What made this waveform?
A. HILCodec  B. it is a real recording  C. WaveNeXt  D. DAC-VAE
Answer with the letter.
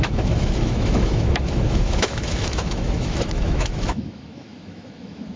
D